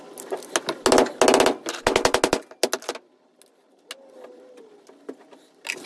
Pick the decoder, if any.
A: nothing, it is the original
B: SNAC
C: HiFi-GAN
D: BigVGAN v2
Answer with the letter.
A